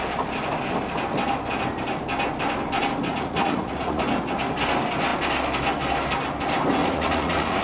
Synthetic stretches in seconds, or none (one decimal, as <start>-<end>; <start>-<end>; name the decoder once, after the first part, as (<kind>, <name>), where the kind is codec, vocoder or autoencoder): 3.1-4.0 (vocoder, Vocos); 6.8-7.6